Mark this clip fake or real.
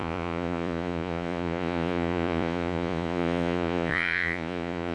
fake